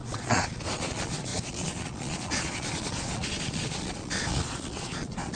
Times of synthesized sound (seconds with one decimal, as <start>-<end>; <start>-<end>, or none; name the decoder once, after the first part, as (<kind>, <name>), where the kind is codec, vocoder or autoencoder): 0.0-5.4 (vocoder, Vocos)